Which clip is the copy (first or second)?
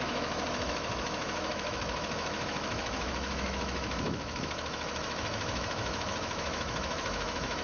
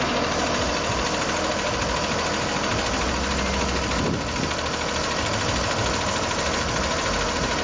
first